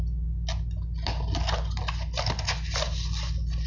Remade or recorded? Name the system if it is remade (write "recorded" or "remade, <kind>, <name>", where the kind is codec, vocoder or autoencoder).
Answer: recorded